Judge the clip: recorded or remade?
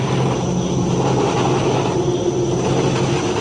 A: recorded